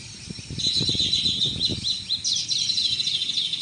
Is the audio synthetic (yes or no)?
no